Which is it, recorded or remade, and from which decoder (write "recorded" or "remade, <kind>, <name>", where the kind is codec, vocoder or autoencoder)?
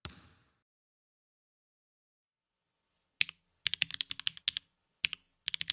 recorded